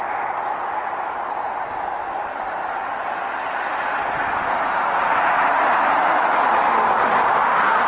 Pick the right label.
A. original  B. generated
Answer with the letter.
A